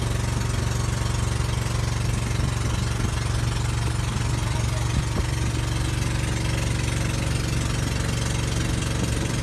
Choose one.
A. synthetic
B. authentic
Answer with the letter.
B